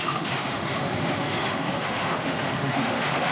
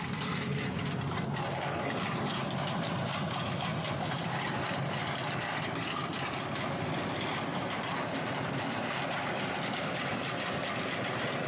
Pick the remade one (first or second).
first